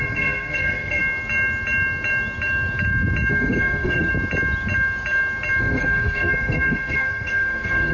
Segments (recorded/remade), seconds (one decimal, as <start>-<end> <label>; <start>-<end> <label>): 0.0-1.0 remade; 1.0-3.3 recorded; 3.3-4.1 remade; 4.1-5.6 recorded; 5.6-7.9 remade